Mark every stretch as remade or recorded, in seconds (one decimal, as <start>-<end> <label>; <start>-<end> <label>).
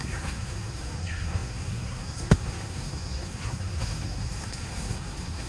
0.0-5.5 remade